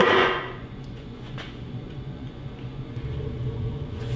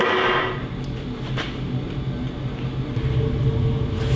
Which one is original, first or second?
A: second